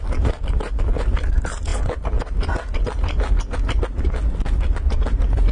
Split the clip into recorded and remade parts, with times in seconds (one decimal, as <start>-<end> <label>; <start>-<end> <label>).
0.0-5.5 recorded